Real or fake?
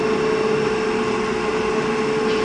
real